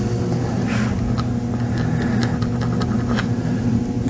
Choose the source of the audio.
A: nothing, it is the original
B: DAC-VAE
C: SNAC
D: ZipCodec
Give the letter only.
A